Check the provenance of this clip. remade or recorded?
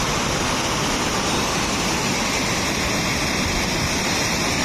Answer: recorded